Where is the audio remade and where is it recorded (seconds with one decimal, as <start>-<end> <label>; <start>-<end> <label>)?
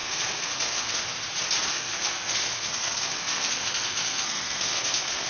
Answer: 0.0-1.0 remade; 1.0-1.7 recorded; 1.7-5.3 remade